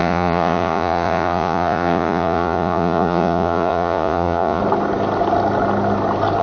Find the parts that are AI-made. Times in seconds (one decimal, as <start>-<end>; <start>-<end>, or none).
0.0-4.6